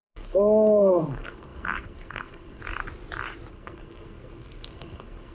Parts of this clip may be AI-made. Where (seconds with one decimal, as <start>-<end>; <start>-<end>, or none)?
0.0-2.6; 3.5-5.3